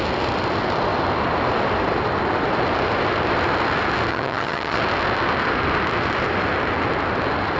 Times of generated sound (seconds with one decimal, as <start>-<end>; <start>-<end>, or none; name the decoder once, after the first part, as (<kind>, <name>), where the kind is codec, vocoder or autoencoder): 4.1-4.8 (vocoder, HiFi-GAN)